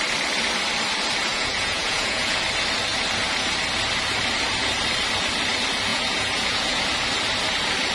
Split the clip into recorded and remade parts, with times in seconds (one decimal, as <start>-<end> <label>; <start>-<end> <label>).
0.0-1.3 recorded; 1.3-2.4 remade; 2.4-5.9 recorded; 5.9-6.8 remade; 6.8-7.9 recorded

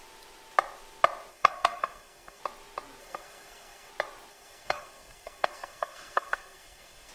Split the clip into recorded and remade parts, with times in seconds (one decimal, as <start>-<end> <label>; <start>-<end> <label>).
0.0-1.3 recorded; 1.3-2.4 remade; 2.4-3.0 recorded; 3.0-3.9 remade; 3.9-4.3 recorded; 4.3-7.1 remade

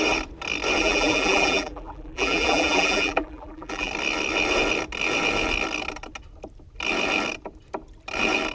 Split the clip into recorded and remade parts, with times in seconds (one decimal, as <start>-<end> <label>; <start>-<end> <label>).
0.0-0.8 recorded; 0.8-3.9 remade; 3.9-8.5 recorded

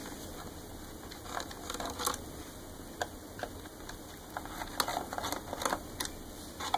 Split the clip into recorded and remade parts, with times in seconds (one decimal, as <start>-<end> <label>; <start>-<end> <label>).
0.0-6.8 recorded

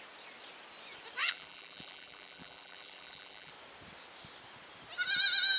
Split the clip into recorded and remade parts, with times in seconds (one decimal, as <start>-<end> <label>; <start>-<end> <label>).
0.0-1.2 recorded; 1.2-3.5 remade; 3.5-5.6 recorded